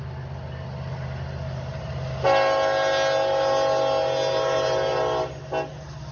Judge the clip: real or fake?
real